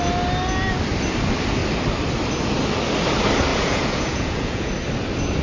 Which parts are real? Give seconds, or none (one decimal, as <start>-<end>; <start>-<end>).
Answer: 0.0-3.5; 4.7-5.4

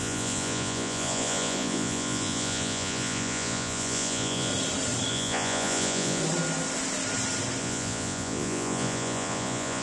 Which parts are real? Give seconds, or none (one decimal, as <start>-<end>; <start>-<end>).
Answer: 4.5-5.1; 6.2-7.6

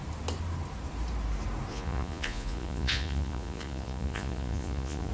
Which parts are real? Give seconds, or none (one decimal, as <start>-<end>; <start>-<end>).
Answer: 0.0-1.7

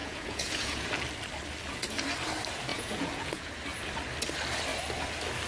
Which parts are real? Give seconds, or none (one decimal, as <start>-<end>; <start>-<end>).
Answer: 0.9-2.7; 3.6-5.5